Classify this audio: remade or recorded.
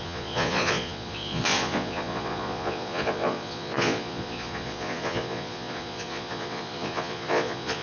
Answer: remade